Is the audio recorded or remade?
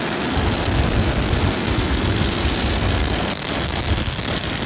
recorded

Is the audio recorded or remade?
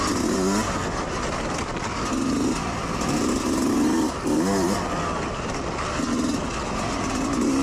recorded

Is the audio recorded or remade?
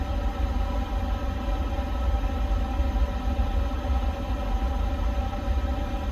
recorded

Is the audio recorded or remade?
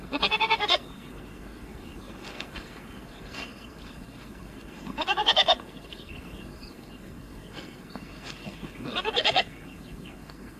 remade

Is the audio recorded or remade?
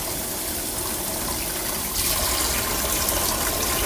recorded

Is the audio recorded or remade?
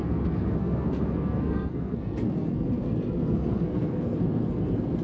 remade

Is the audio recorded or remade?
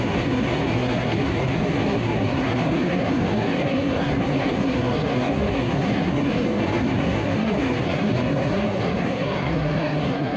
remade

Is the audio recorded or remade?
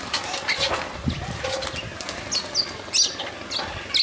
recorded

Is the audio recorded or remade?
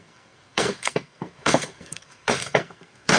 remade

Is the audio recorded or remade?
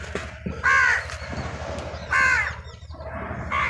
recorded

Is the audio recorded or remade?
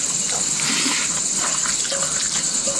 recorded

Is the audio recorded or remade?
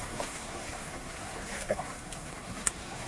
remade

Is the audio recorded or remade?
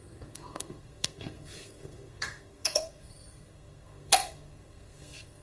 remade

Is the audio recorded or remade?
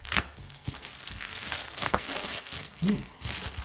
remade